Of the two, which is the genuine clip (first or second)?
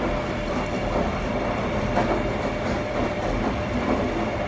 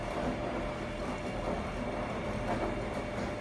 second